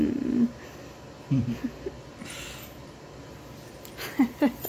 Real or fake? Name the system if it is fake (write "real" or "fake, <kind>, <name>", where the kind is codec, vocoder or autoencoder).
real